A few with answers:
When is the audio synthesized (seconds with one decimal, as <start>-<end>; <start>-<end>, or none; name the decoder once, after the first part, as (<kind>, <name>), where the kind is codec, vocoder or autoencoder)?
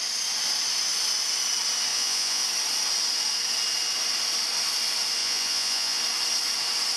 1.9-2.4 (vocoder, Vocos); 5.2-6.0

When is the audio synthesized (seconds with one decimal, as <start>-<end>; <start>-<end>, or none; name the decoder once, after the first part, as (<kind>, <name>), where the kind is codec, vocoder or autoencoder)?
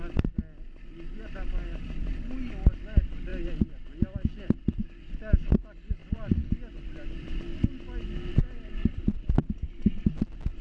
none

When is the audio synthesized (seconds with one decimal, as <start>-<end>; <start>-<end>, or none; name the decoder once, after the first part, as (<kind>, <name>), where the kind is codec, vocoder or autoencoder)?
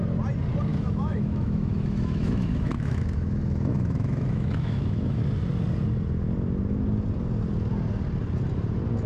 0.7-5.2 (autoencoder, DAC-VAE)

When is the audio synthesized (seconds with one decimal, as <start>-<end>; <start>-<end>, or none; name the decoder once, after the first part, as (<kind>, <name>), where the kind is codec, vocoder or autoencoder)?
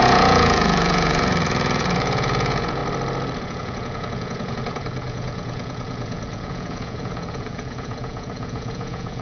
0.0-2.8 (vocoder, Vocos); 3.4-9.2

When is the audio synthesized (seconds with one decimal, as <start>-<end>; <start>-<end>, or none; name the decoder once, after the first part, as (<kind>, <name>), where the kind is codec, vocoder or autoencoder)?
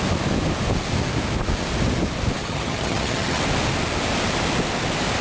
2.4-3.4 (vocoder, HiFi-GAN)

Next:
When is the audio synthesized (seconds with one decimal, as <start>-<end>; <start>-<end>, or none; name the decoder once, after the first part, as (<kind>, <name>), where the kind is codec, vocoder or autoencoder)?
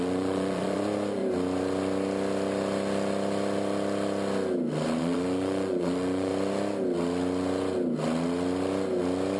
0.0-1.2 (vocoder, Vocos); 5.0-6.3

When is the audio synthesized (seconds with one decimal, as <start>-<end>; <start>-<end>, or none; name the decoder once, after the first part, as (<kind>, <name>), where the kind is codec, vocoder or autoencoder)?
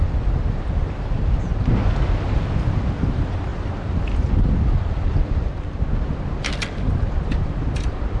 none